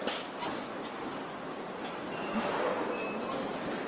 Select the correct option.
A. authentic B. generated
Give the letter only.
A